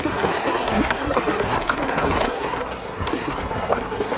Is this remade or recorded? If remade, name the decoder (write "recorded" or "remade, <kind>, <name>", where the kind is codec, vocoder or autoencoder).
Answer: remade, codec, SNAC